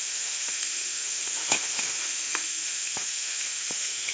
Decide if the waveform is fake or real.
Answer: fake